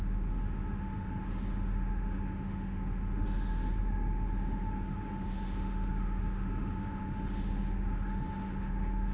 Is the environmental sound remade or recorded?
remade